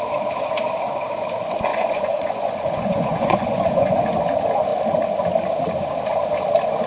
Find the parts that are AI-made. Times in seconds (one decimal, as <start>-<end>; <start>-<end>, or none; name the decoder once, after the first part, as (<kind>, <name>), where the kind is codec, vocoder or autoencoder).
1.7-4.0 (vocoder, Vocos)